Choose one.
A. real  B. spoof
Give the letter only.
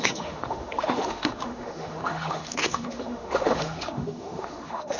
B